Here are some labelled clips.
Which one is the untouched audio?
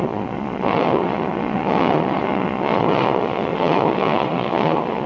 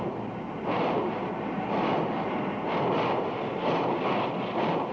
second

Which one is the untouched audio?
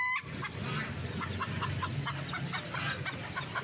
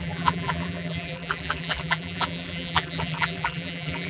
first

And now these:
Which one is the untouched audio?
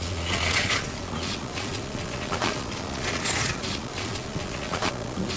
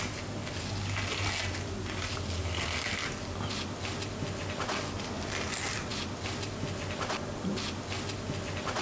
second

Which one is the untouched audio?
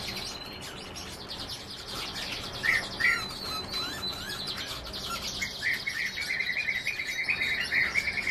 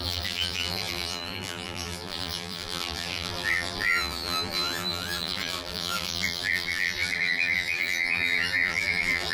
first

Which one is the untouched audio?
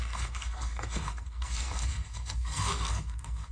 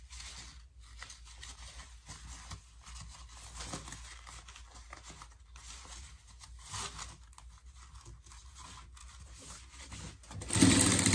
second